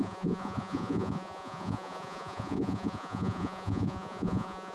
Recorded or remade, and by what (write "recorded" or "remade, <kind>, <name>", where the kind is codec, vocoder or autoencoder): remade, vocoder, Vocos